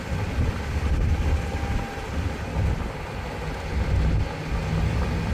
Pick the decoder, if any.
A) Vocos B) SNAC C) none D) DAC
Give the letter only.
C